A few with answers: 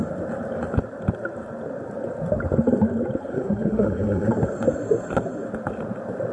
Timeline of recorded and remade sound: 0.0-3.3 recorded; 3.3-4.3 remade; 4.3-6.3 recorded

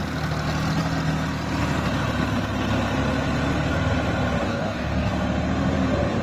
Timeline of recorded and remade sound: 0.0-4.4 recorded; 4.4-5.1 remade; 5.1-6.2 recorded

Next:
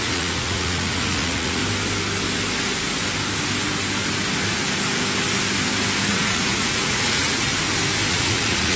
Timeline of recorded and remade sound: 0.0-1.6 remade; 1.6-6.1 recorded; 6.1-7.5 remade; 7.5-8.1 recorded; 8.1-8.8 remade